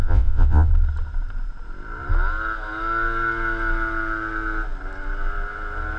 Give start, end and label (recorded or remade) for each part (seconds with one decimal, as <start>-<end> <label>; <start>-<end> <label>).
0.0-0.7 remade; 0.7-6.0 recorded